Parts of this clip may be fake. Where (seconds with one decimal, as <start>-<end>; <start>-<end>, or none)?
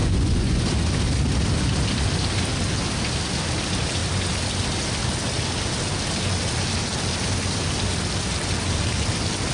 0.0-0.6